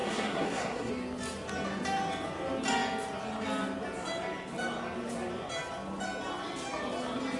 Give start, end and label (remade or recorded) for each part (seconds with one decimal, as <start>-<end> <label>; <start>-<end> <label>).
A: 0.0-0.9 remade; 0.9-7.4 recorded